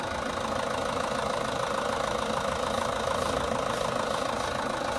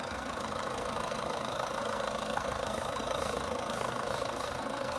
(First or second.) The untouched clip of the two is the first